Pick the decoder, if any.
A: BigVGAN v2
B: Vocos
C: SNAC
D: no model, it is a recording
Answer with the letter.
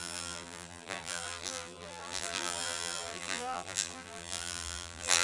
A